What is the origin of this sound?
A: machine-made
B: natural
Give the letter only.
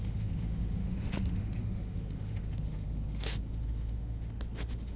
A